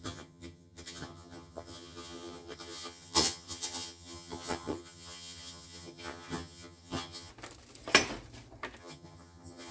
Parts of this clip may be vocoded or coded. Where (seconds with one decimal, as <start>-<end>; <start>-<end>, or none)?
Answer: 0.0-7.3; 8.8-9.7